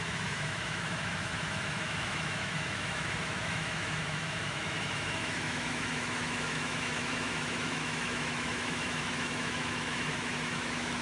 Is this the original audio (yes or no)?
no